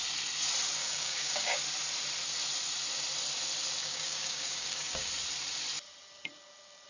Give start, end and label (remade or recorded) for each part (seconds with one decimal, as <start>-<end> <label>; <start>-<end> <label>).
0.0-0.8 recorded; 0.8-1.6 remade; 1.6-3.8 recorded; 3.8-5.1 remade; 5.1-6.9 recorded